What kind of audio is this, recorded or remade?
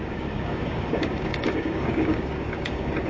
remade